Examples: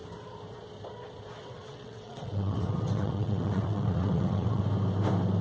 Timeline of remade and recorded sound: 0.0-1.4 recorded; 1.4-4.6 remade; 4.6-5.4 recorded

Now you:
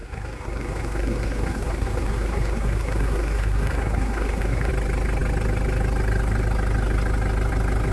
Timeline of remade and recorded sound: 0.0-4.7 remade; 4.7-7.9 recorded

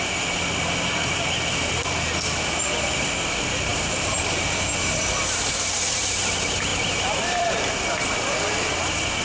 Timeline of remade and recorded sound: 0.0-3.7 recorded; 3.7-4.4 remade; 4.4-6.7 recorded; 6.7-7.5 remade; 7.5-9.2 recorded

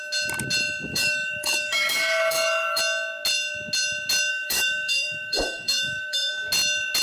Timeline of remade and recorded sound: 0.0-0.9 recorded; 0.9-2.8 remade; 2.8-4.3 recorded; 4.3-6.3 remade; 6.3-7.0 recorded